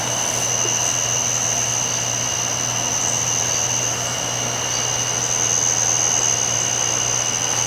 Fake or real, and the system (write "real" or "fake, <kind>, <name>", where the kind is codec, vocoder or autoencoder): real